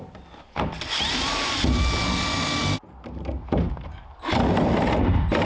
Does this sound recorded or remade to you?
recorded